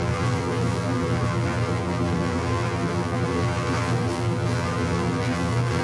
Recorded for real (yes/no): no